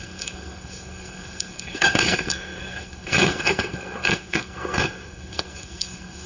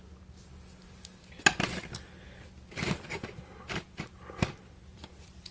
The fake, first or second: first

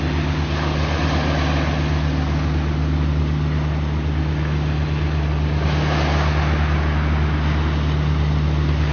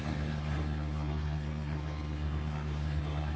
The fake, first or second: second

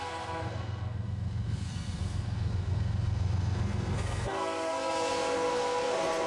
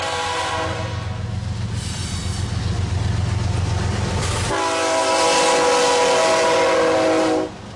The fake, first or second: first